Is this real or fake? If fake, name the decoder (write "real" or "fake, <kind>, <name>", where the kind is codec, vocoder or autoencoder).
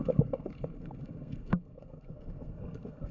fake, codec, SNAC